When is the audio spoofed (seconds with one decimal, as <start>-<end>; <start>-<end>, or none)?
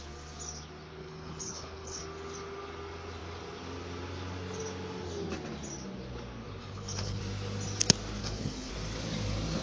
1.0-2.0; 6.6-7.2; 8.2-8.7